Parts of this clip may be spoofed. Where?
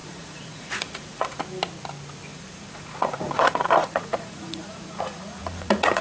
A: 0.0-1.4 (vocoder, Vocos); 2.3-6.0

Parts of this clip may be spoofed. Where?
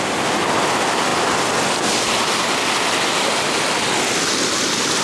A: none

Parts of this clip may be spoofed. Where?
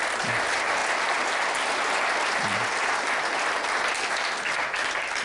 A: none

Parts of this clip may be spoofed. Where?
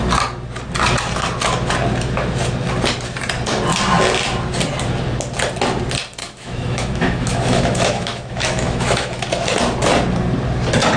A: 6.2-9.2 (autoencoder, DAC-VAE)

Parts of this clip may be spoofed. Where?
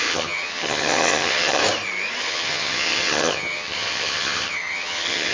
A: 0.0-1.6 (vocoder, HiFi-GAN); 2.2-5.3